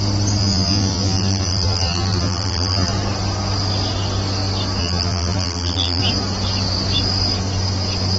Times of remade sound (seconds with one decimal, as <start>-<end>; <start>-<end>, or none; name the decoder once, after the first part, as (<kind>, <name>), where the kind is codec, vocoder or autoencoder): 0.4-2.9 (vocoder, BigVGAN v2); 4.8-6.0